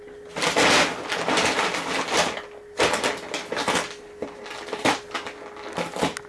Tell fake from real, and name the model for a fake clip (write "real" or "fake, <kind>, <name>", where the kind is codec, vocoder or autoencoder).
real